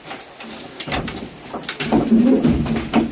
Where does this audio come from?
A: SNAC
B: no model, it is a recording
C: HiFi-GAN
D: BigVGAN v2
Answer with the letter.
B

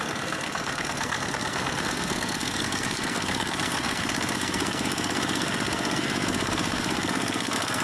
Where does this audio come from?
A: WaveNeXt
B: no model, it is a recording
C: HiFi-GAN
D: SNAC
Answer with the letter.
D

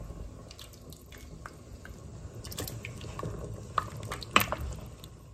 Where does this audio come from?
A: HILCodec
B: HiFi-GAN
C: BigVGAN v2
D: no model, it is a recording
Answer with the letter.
D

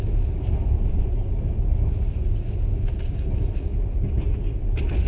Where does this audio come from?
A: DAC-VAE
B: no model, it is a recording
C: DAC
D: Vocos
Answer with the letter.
B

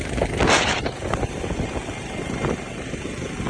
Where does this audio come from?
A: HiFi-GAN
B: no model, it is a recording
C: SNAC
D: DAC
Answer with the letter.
B